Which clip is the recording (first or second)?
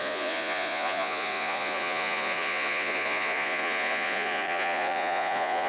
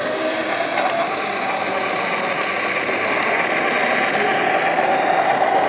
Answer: second